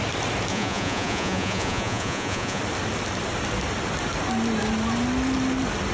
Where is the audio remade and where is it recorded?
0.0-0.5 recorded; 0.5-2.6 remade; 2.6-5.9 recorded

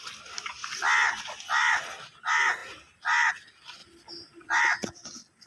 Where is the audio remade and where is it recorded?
0.0-2.6 recorded; 2.6-3.3 remade; 3.3-3.8 recorded; 3.8-4.6 remade; 4.6-5.5 recorded

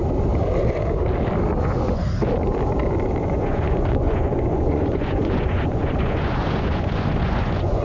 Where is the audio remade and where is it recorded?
0.0-1.6 recorded; 1.6-2.0 remade; 2.0-3.2 recorded; 3.2-7.8 remade

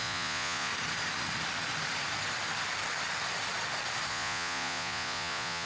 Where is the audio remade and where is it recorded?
0.0-0.7 remade; 0.7-4.1 recorded; 4.1-5.7 remade